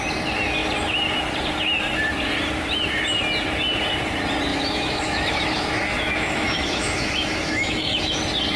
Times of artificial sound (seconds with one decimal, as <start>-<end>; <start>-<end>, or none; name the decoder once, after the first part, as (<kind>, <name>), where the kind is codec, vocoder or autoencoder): 4.5-8.2 (autoencoder, DAC-VAE)